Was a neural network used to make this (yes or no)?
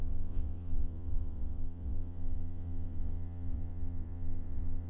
yes